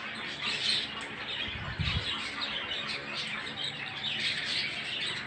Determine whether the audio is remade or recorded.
recorded